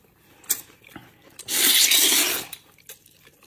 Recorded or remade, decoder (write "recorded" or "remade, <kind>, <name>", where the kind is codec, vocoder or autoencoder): recorded